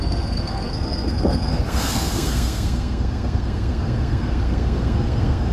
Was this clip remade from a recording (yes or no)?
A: yes